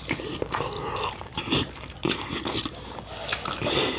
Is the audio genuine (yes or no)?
yes